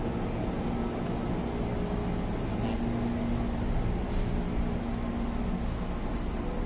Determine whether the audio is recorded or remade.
recorded